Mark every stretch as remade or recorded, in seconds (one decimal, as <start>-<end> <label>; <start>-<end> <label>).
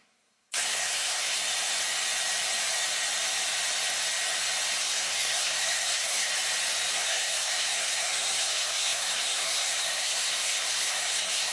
0.0-1.4 remade; 1.4-4.8 recorded; 4.8-6.3 remade; 6.3-6.9 recorded; 6.9-11.5 remade